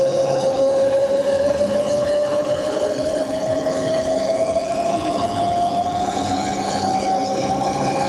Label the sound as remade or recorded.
remade